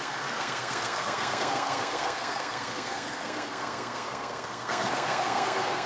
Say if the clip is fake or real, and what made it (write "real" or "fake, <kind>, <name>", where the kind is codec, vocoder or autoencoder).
fake, codec, SNAC